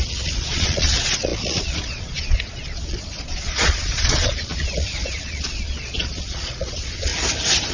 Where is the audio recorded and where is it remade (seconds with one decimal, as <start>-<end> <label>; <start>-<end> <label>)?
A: 0.0-7.1 remade; 7.1-7.7 recorded